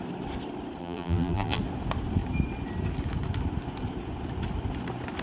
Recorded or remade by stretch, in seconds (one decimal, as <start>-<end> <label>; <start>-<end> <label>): 0.0-0.8 recorded; 0.8-1.6 remade; 1.6-5.2 recorded